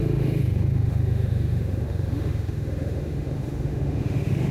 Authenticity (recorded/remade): remade